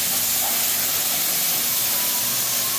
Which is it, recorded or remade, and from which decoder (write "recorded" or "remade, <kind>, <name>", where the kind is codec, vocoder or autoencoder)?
recorded